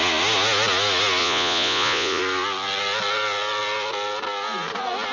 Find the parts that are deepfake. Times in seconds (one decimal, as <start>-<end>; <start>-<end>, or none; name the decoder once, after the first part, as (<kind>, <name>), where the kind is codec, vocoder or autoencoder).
1.2-2.2 (vocoder, Vocos)